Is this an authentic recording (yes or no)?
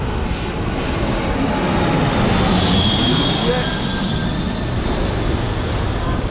yes